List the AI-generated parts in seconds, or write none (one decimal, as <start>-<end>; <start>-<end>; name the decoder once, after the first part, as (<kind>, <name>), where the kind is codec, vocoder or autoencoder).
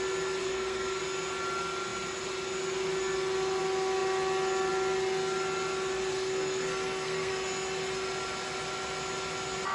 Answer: 0.4-1.0 (codec, SNAC); 6.1-7.3